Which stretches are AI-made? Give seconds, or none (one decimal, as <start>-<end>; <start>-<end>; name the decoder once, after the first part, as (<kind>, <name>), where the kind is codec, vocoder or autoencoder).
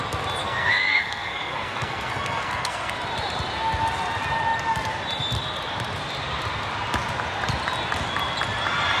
0.4-2.9 (codec, SNAC)